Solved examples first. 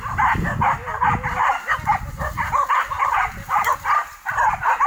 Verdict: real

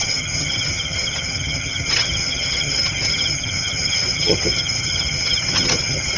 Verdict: fake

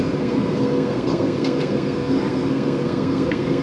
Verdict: fake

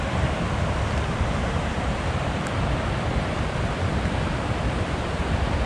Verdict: fake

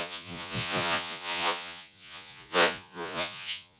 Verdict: fake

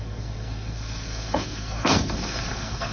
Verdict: fake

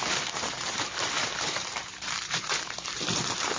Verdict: fake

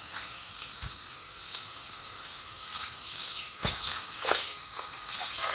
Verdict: fake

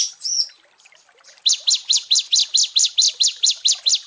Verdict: real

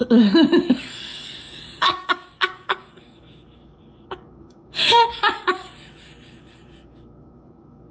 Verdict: fake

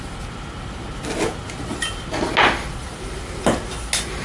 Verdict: real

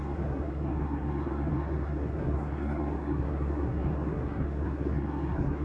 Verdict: fake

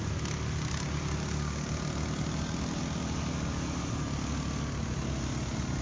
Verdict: real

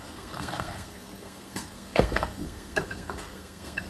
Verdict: fake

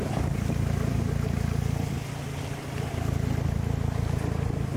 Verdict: real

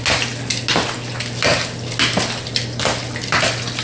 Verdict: real